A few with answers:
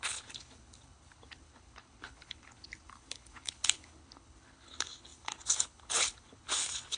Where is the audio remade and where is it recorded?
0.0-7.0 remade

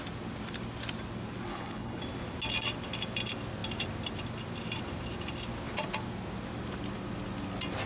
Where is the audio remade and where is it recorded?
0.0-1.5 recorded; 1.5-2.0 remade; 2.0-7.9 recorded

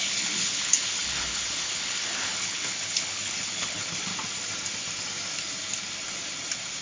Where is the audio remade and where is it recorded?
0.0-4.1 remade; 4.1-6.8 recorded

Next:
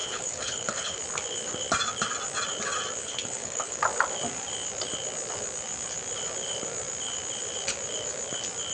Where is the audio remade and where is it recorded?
0.0-1.0 remade; 1.0-3.0 recorded; 3.0-3.8 remade; 3.8-8.7 recorded

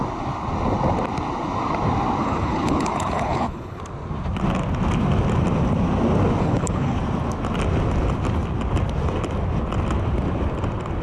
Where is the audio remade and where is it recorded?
0.0-2.2 recorded; 2.2-3.8 remade; 3.8-6.4 recorded; 6.4-7.0 remade; 7.0-11.0 recorded